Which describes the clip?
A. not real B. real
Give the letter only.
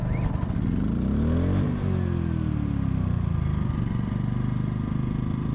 B